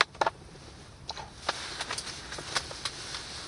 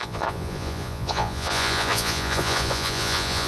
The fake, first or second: second